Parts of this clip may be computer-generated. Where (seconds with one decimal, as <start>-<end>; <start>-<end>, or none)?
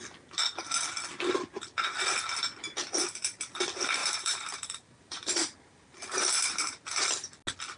4.0-7.1